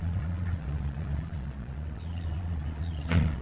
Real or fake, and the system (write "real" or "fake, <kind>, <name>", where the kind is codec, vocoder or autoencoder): fake, vocoder, Vocos